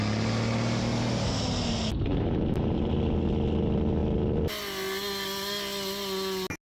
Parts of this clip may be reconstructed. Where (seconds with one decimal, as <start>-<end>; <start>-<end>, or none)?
1.9-3.0

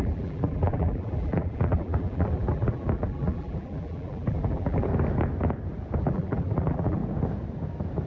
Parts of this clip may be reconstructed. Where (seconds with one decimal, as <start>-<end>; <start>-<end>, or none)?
0.0-4.9; 6.0-7.0